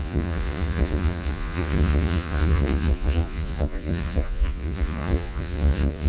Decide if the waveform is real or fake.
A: fake